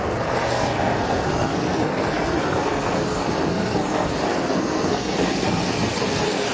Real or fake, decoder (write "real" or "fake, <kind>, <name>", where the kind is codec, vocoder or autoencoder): fake, codec, SNAC